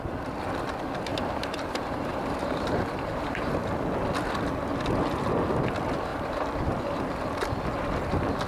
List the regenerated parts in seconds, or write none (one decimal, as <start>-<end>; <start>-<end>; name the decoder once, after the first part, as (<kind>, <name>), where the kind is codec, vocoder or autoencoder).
1.1-3.6 (vocoder, BigVGAN v2); 6.1-6.6